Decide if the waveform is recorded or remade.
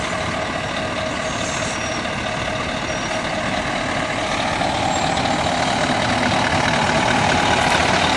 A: recorded